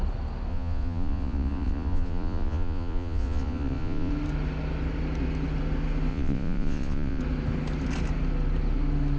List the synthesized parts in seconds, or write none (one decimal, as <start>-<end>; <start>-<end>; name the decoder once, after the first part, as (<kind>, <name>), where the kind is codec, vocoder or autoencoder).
0.5-4.1 (vocoder, Vocos); 6.1-7.2